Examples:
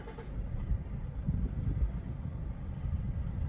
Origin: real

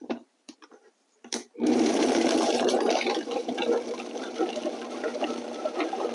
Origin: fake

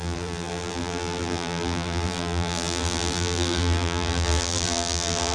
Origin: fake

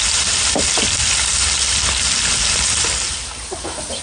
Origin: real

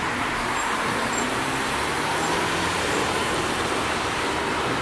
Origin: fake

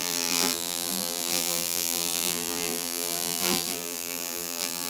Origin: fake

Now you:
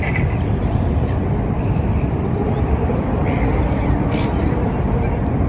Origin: fake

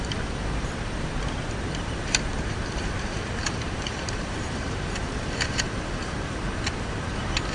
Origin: fake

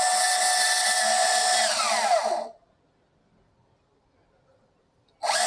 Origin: real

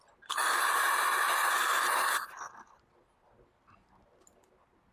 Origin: real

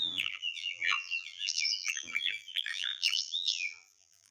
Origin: fake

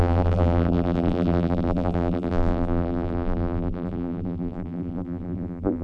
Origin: fake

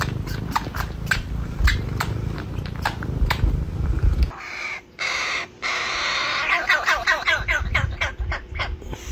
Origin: fake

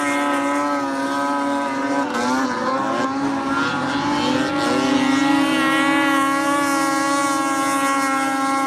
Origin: real